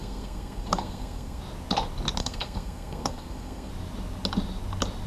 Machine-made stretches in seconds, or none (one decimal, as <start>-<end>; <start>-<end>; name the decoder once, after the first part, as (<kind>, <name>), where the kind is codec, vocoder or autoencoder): 0.0-1.4 (codec, SNAC); 2.2-3.7